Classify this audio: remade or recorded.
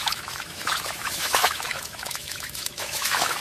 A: remade